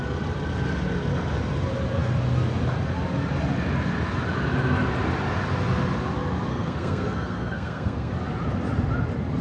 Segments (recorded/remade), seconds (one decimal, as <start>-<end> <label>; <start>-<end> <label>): 0.0-6.5 recorded; 6.5-8.1 remade; 8.1-9.4 recorded